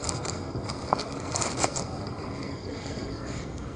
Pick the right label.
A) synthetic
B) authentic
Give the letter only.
A